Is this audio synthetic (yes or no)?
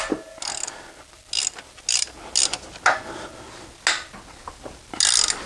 no